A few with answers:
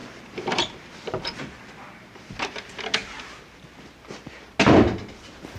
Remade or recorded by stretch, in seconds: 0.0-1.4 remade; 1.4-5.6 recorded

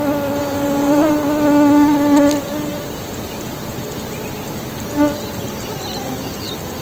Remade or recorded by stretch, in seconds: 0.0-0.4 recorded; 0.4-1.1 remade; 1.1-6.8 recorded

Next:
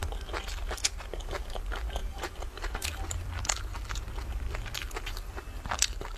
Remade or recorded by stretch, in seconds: 0.0-2.0 recorded; 2.0-5.7 remade; 5.7-6.2 recorded

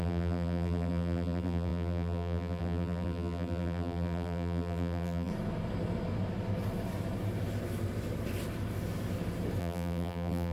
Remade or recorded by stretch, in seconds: 0.0-5.3 remade; 5.3-9.6 recorded; 9.6-10.5 remade

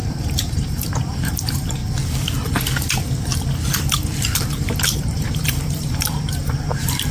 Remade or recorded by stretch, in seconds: 0.0-1.8 remade; 1.8-5.0 recorded; 5.0-7.1 remade

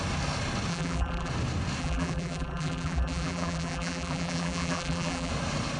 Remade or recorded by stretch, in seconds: 0.0-0.7 recorded; 0.7-1.3 remade; 1.3-1.8 recorded; 1.8-5.3 remade; 5.3-5.8 recorded

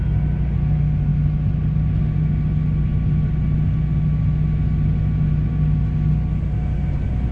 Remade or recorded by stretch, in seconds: 0.0-7.3 recorded

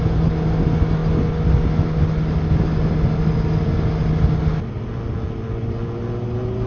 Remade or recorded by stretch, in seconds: 0.0-6.7 recorded